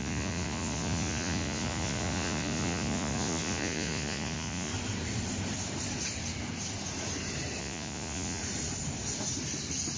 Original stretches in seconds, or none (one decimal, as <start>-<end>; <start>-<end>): 4.7-7.6; 8.4-10.0

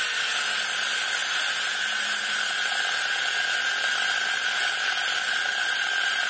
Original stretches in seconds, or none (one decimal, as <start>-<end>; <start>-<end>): 0.0-6.3

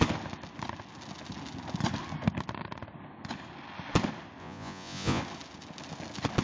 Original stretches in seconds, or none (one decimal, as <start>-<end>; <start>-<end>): 0.0-4.4; 5.2-6.4